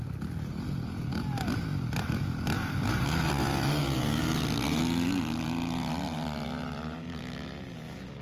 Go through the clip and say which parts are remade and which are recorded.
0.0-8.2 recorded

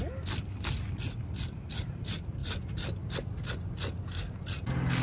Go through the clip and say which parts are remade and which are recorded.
0.0-5.0 recorded